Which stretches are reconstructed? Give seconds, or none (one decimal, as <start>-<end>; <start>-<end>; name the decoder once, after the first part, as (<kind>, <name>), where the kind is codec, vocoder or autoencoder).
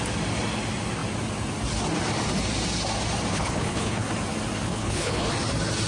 3.3-4.1 (codec, HILCodec); 4.7-5.3